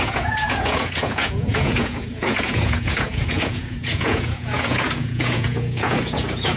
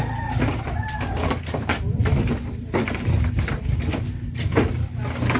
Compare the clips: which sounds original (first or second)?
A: second